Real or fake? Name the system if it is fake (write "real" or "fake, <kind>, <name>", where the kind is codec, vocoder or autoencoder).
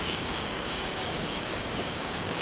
fake, codec, DAC